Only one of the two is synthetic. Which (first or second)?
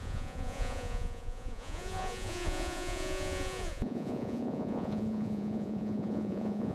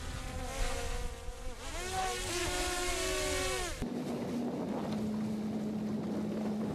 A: first